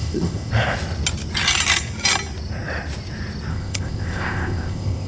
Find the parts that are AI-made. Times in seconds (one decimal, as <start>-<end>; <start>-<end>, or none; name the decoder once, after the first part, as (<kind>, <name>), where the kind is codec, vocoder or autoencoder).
0.0-0.5 (codec, ZipCodec); 3.5-5.1